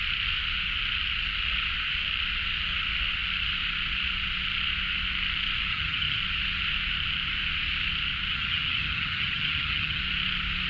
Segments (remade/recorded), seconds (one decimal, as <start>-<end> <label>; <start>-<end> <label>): 0.0-5.7 recorded; 5.7-6.2 remade; 6.2-8.3 recorded; 8.3-10.0 remade; 10.0-10.7 recorded